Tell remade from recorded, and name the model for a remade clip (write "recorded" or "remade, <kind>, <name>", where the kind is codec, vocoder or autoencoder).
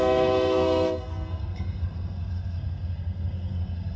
remade, codec, SNAC